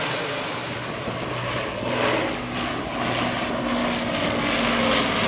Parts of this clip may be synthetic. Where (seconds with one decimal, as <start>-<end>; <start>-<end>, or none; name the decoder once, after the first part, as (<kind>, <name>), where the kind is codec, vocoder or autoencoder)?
none